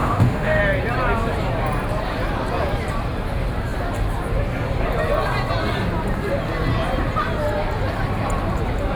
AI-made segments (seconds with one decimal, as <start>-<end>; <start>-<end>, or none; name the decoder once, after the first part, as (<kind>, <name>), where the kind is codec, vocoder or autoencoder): 0.0-0.6 (autoencoder, DAC-VAE)